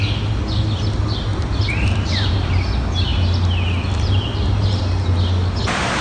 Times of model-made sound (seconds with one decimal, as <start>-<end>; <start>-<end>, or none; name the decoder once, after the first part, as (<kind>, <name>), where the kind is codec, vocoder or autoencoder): 1.3-2.5 (vocoder, BigVGAN v2)